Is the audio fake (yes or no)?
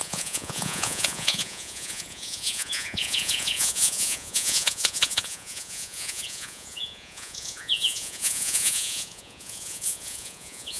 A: yes